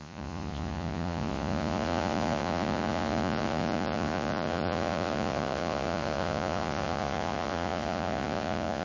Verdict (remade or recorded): remade